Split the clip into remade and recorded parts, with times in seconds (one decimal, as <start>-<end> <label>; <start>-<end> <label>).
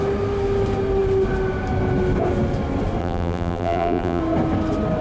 0.0-3.0 recorded; 3.0-4.2 remade; 4.2-5.0 recorded